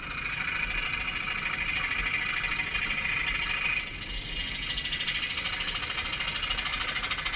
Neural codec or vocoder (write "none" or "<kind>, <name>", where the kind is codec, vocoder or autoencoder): none